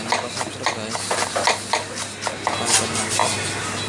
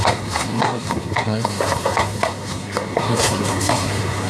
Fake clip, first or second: second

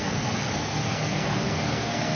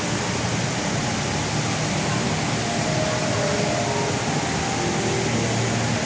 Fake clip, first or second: first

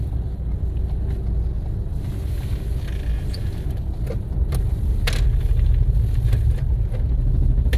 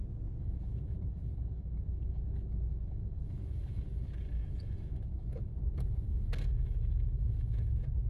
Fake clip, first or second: second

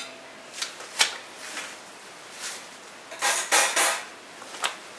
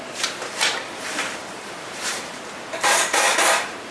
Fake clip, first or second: second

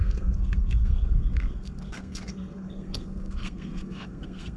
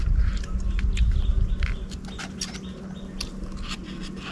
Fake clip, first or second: first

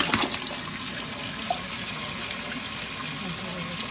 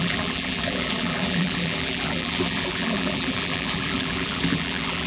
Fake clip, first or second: second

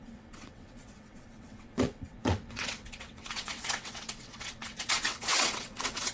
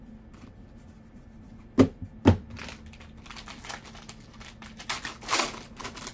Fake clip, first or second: first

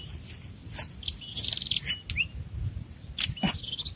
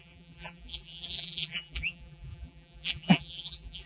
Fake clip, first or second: second